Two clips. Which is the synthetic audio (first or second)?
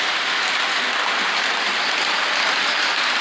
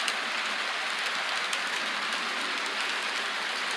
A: first